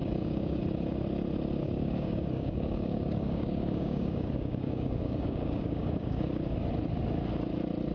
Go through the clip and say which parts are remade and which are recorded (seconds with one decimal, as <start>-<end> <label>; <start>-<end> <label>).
0.0-0.6 remade; 0.6-1.6 recorded; 1.6-6.3 remade; 6.3-7.9 recorded